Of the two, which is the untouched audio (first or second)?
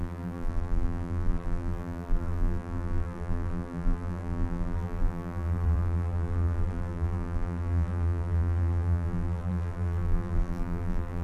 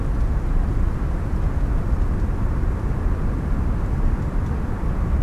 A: second